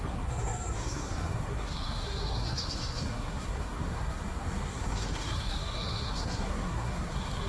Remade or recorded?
remade